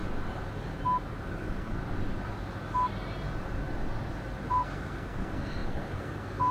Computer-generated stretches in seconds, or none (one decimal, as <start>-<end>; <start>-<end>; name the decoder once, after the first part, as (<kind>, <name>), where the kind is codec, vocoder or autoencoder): 1.3-1.8 (codec, SNAC); 4.5-6.5